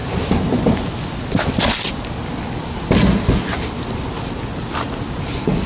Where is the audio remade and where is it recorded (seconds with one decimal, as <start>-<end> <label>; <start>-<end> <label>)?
0.0-5.7 recorded